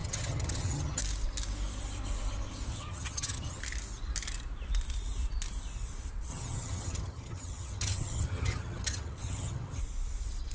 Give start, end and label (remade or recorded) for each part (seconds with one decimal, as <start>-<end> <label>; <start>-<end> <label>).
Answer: 0.0-1.0 remade; 1.0-2.7 recorded; 2.7-3.6 remade; 3.6-6.3 recorded; 6.3-9.8 remade; 9.8-10.5 recorded